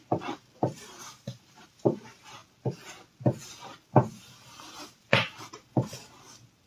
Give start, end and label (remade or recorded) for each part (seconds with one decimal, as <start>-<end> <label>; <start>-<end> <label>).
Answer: 0.0-2.4 remade; 2.4-4.2 recorded; 4.2-6.7 remade